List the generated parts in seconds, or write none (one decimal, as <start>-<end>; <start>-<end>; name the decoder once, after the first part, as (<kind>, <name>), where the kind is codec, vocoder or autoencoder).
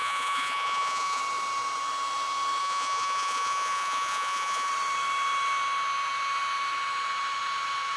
0.0-1.2 (vocoder, Vocos); 2.6-4.7